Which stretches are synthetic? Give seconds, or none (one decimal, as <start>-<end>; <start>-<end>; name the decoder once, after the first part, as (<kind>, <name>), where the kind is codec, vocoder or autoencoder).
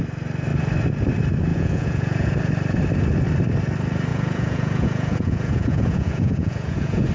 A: 1.5-2.5 (vocoder, Vocos); 4.1-7.1